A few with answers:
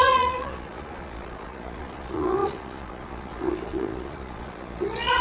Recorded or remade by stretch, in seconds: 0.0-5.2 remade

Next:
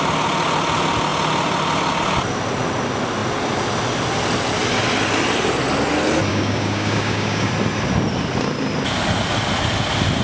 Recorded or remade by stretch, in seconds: 0.0-6.3 recorded; 6.3-7.5 remade; 7.5-10.2 recorded

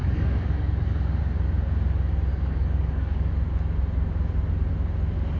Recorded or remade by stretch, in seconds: 0.0-1.2 remade; 1.2-2.3 recorded; 2.3-3.3 remade; 3.3-5.4 recorded

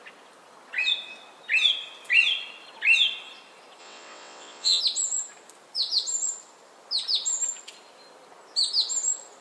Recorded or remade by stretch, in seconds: 0.0-3.8 recorded; 3.8-4.8 remade; 4.8-9.4 recorded